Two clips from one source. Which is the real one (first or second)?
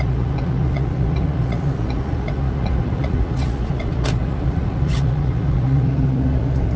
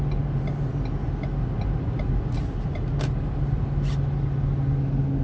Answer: second